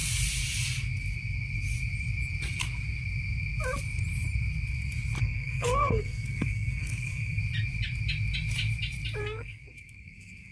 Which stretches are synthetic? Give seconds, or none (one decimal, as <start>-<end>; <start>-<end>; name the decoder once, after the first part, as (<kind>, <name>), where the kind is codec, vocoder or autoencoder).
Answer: 5.2-7.4 (codec, SNAC); 9.2-10.5